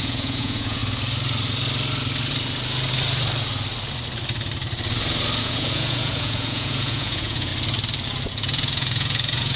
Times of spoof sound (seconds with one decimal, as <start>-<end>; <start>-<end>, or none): 0.0-0.8; 5.4-7.5; 8.3-9.6